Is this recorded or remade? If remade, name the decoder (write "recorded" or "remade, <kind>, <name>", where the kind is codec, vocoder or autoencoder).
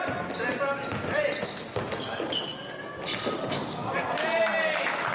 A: recorded